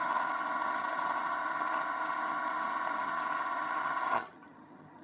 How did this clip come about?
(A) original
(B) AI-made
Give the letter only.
B